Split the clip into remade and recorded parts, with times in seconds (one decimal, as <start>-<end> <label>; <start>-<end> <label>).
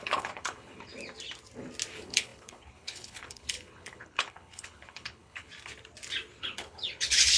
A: 0.0-0.9 remade; 0.9-1.9 recorded; 1.9-5.5 remade; 5.5-6.4 recorded; 6.4-7.4 remade